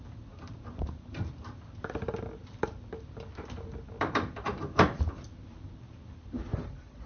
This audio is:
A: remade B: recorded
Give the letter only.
A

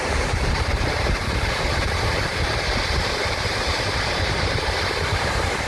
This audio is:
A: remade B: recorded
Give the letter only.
A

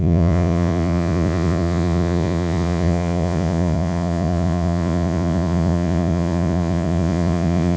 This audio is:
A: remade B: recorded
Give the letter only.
A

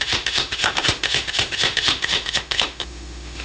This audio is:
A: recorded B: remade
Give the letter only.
B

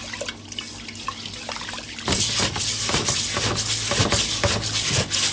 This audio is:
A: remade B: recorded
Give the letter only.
B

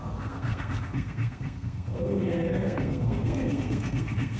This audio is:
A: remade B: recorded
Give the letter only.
A